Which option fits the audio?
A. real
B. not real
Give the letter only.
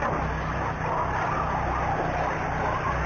A